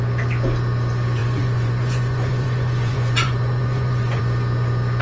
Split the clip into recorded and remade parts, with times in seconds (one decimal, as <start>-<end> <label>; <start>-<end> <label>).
0.0-1.2 recorded; 1.2-4.2 remade; 4.2-5.0 recorded